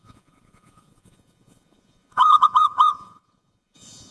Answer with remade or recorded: remade